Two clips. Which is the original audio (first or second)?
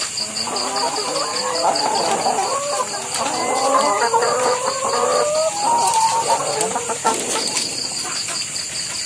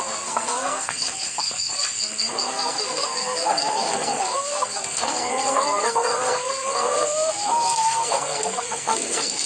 first